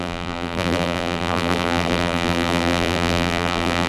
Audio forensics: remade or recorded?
remade